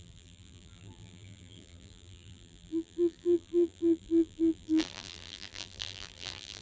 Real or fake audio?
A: fake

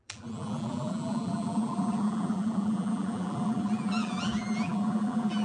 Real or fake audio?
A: fake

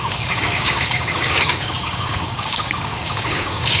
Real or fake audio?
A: fake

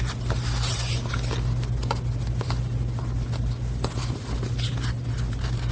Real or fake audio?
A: real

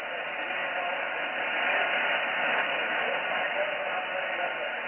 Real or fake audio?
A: real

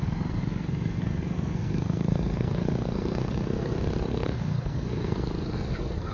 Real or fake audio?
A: fake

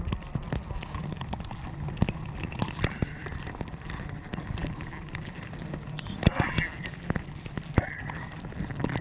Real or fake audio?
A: fake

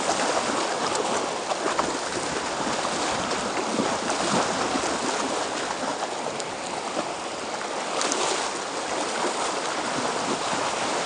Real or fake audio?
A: real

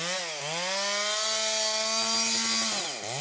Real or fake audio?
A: real